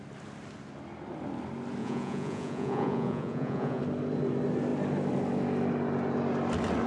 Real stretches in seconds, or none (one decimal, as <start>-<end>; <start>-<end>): 0.0-1.8; 3.8-6.9